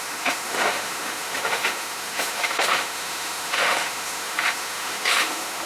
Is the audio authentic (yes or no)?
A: no